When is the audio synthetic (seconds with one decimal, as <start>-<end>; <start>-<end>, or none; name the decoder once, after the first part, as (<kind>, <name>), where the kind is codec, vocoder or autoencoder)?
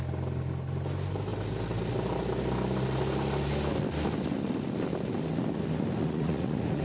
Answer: 6.0-6.8 (vocoder, Vocos)